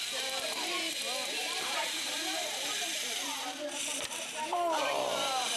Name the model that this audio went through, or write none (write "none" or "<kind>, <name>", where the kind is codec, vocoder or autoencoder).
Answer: vocoder, BigVGAN v2